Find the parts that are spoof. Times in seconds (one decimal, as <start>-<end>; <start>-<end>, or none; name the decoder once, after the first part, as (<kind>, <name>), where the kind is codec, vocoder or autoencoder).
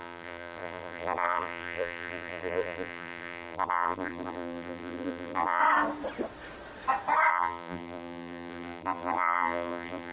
0.0-5.6 (vocoder, BigVGAN v2); 7.3-10.1